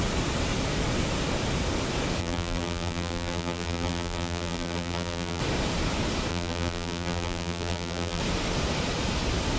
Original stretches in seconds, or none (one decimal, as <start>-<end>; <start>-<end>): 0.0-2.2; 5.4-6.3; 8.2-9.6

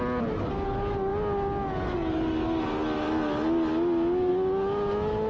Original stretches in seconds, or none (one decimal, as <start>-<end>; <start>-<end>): 0.0-5.3

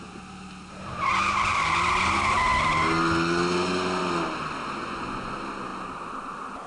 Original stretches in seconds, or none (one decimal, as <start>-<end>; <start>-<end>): 0.0-4.8; 5.3-6.7

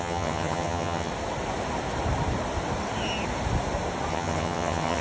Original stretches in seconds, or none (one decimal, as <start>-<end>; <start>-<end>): 1.1-4.1